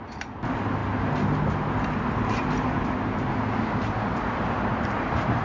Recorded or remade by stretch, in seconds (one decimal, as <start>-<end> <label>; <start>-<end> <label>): 0.0-5.4 recorded